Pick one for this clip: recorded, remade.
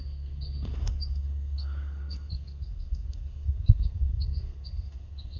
remade